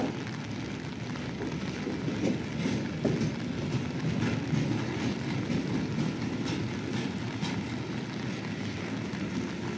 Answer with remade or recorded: recorded